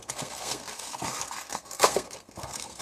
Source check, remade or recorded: remade